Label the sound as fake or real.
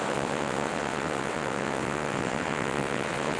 fake